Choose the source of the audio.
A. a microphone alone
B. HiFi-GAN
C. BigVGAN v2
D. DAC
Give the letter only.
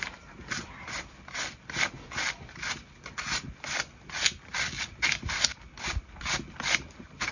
A